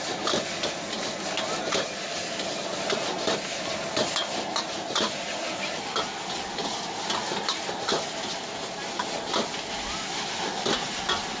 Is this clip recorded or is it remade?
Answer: recorded